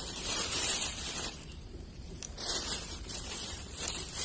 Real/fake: fake